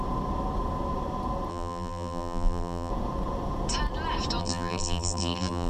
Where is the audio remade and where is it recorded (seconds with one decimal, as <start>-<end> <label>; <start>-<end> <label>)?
0.0-1.5 recorded; 1.5-2.9 remade; 2.9-4.4 recorded; 4.4-5.7 remade